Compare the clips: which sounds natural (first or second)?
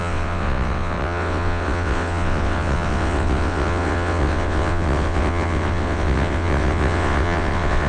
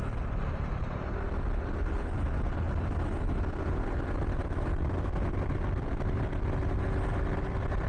second